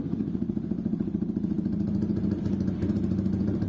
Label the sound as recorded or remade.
remade